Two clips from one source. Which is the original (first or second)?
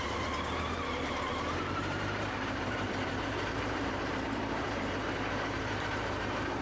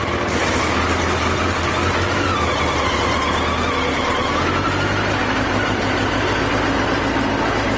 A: second